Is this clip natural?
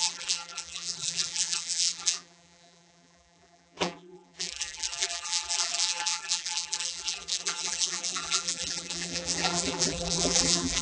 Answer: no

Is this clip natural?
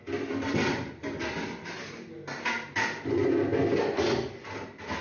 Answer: yes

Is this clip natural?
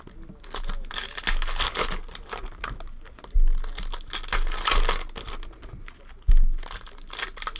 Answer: yes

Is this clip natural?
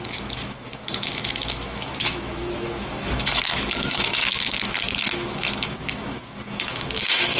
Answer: no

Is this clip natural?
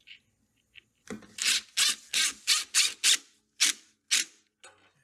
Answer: yes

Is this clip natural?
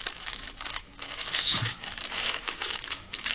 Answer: no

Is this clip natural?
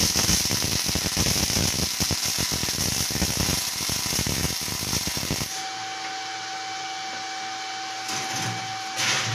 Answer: yes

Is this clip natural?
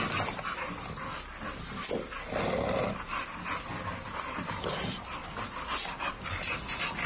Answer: yes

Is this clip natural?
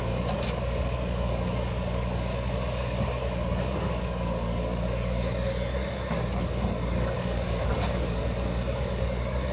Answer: no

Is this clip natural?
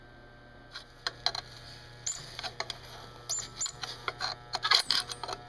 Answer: yes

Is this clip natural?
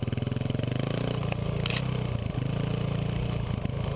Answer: yes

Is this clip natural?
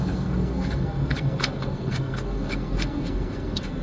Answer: no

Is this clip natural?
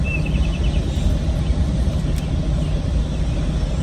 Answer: yes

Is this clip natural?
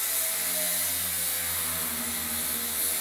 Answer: yes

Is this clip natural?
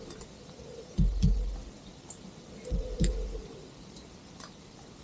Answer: yes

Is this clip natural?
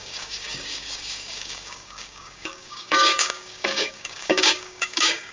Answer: no